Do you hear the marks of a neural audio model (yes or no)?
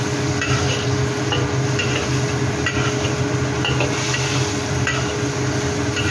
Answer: no